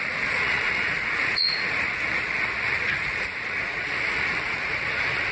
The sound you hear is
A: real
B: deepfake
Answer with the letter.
B